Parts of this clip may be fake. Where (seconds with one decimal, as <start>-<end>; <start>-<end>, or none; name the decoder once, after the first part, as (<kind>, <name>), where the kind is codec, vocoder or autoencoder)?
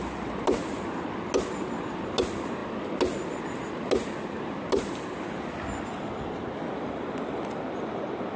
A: none